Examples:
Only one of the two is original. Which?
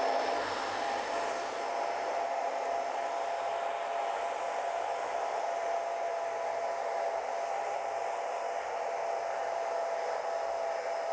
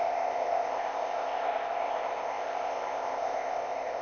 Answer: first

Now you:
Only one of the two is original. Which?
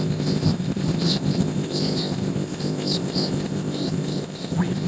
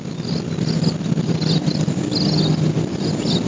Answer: second